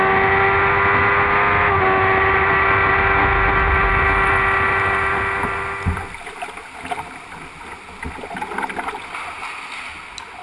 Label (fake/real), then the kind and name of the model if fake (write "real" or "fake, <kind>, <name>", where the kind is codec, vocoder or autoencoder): real